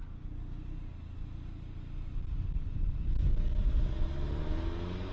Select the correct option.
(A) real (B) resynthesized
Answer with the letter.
A